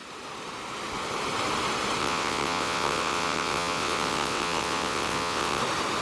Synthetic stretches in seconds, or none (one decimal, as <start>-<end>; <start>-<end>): 2.0-5.6